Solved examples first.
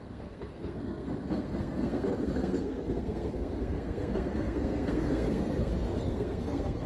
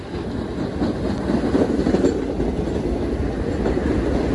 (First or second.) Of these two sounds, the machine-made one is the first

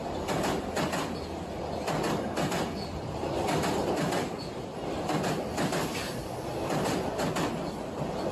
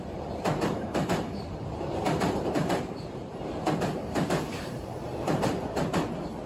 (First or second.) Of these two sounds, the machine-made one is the second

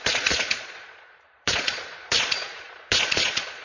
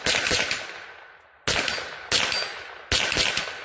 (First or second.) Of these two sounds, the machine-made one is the first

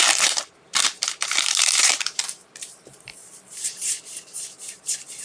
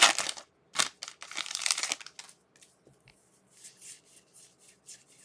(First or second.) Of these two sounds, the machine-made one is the first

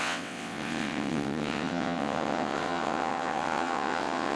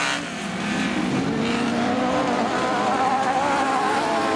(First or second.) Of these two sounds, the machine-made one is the first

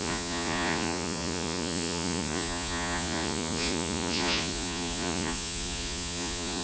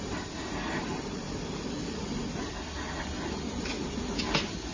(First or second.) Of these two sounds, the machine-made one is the first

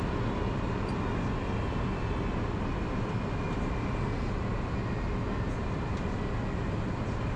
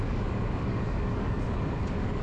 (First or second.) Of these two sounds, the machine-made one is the second